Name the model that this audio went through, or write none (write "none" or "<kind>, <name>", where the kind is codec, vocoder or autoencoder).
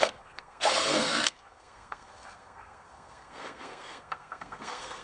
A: codec, SNAC